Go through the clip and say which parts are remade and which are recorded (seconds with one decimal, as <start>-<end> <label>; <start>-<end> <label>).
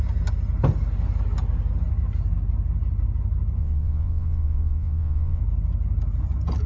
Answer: 0.0-3.6 recorded; 3.6-5.4 remade; 5.4-6.7 recorded